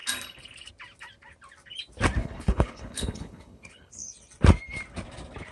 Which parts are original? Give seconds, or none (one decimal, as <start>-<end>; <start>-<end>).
0.0-2.2; 3.9-5.5